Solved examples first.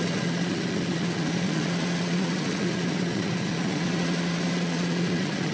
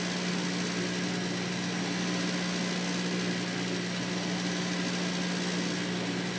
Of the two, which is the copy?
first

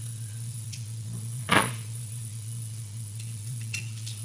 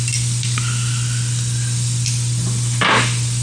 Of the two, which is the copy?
first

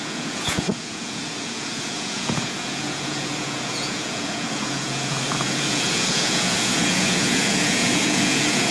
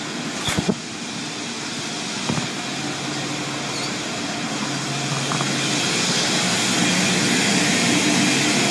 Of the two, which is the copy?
first